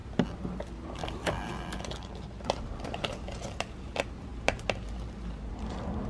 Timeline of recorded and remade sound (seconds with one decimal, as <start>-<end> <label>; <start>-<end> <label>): 0.0-6.1 recorded